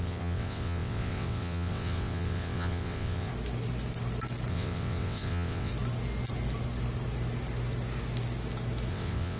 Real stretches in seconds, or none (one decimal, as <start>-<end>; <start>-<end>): 3.3-4.5; 5.7-8.9